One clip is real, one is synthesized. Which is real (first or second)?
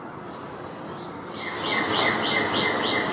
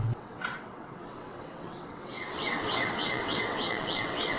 first